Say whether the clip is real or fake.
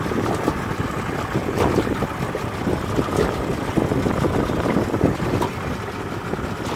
real